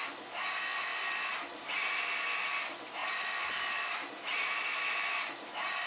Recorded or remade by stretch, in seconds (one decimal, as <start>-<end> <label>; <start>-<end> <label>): 0.0-5.9 recorded